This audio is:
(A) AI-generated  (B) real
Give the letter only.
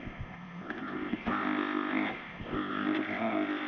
A